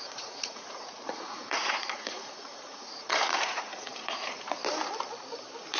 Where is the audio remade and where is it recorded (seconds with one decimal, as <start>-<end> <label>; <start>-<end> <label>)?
0.0-4.6 remade; 4.6-5.8 recorded

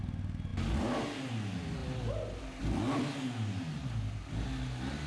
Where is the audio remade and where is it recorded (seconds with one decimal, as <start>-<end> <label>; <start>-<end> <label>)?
0.0-5.1 recorded

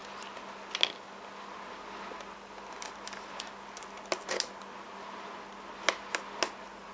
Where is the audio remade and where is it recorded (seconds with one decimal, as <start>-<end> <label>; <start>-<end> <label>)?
0.0-6.9 recorded

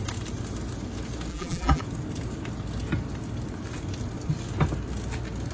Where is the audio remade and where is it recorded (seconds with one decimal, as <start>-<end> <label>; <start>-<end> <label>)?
0.0-1.3 recorded; 1.3-1.8 remade; 1.8-5.5 recorded

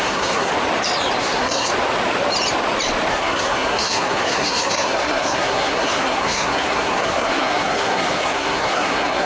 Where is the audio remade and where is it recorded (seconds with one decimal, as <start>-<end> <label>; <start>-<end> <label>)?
0.0-0.5 remade; 0.5-1.2 recorded; 1.2-1.7 remade; 1.7-3.1 recorded; 3.1-9.3 remade

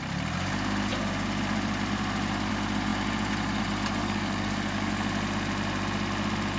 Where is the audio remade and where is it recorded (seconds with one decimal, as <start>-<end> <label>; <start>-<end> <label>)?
0.0-4.0 recorded; 4.0-4.9 remade; 4.9-6.6 recorded

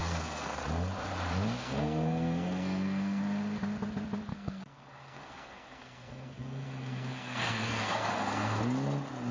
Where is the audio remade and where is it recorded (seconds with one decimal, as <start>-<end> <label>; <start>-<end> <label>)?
0.0-0.6 remade; 0.6-1.6 recorded; 1.6-3.2 remade; 3.2-4.3 recorded; 4.3-8.6 remade; 8.6-9.3 recorded

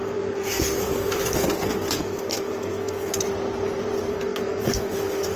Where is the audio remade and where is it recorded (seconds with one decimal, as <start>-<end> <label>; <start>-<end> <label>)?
0.0-3.2 remade; 3.2-4.1 recorded; 4.1-5.4 remade